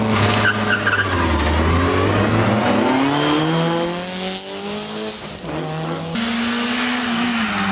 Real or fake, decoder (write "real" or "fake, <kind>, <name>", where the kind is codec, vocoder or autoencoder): real